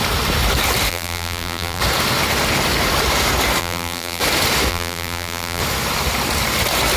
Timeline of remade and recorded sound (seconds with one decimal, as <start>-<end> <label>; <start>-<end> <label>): 0.0-0.9 recorded; 0.9-1.8 remade; 1.8-3.6 recorded; 3.6-4.2 remade; 4.2-4.7 recorded; 4.7-5.6 remade; 5.6-7.0 recorded